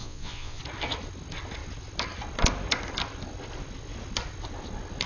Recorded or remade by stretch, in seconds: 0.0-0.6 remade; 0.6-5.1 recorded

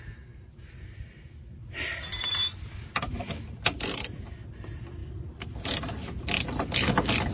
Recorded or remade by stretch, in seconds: 0.0-7.3 recorded